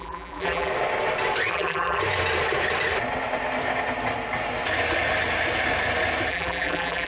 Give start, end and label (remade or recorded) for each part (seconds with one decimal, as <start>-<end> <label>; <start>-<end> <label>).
0.0-0.7 remade; 0.7-1.5 recorded; 1.5-2.0 remade; 2.0-6.3 recorded; 6.3-7.1 remade